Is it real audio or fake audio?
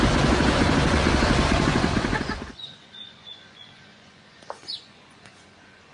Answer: fake